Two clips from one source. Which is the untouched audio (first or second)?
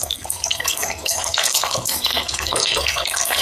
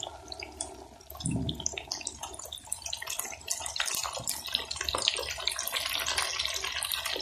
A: second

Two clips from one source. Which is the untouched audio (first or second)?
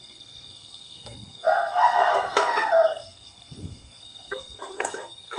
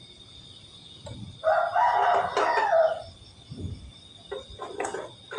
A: second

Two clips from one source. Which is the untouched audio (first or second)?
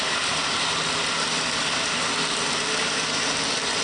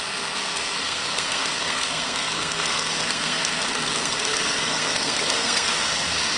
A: first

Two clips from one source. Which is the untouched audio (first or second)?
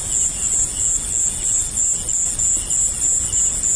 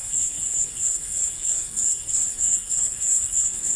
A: first